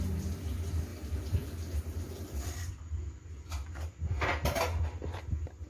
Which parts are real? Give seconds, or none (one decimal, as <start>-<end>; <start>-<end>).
0.0-0.9; 2.5-5.7